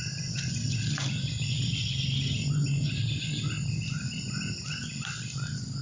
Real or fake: real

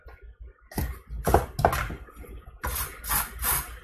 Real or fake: real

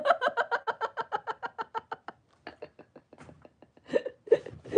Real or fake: real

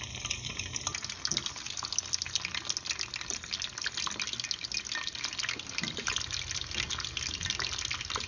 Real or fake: real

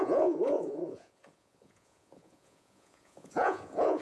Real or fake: fake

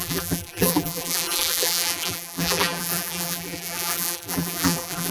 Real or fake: fake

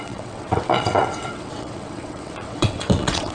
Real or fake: fake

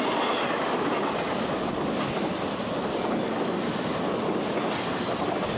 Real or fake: real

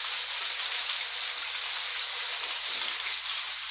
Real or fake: real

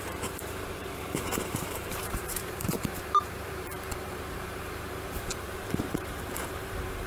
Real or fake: fake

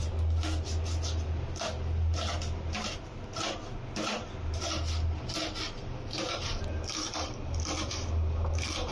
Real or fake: real